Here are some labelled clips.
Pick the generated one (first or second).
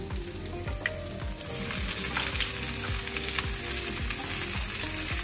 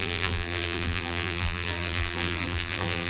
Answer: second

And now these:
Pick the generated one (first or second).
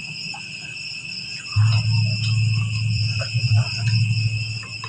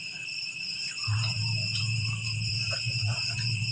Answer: second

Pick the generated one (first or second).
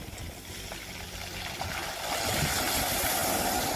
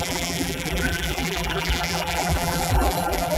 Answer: second